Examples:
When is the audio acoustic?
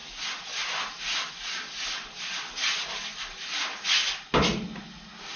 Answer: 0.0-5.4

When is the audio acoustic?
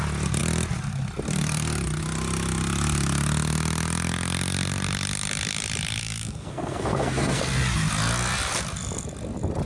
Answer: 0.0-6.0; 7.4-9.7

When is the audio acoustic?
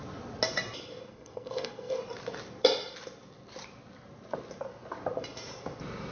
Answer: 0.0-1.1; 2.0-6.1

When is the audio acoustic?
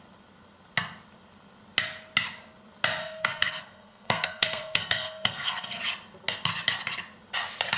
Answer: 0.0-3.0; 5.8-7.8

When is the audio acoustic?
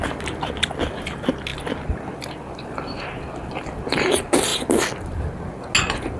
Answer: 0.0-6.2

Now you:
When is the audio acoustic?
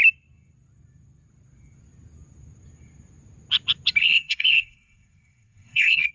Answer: 0.0-4.0